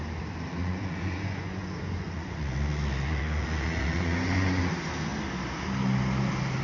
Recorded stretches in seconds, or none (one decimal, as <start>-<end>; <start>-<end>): 0.0-0.6; 4.6-6.6